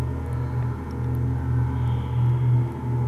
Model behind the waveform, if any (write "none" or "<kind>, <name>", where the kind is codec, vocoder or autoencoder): none